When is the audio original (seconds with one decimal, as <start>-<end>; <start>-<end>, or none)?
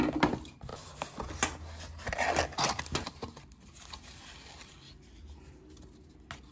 0.0-6.5